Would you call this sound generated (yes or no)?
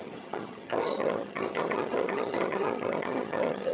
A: yes